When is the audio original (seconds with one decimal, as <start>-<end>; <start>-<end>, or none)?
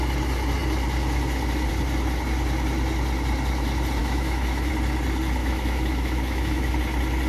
0.0-4.0; 4.7-5.4; 6.7-7.3